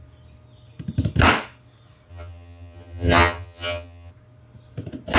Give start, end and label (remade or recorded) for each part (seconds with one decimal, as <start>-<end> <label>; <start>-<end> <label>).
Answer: 0.0-2.1 recorded; 2.1-4.1 remade; 4.1-5.2 recorded